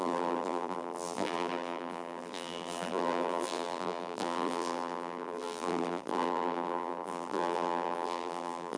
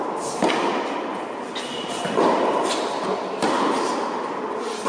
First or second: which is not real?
first